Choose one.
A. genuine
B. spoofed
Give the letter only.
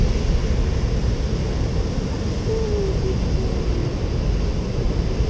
A